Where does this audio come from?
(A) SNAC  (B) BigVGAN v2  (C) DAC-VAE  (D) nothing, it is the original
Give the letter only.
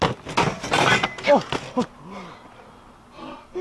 D